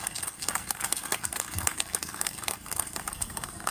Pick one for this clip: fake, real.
fake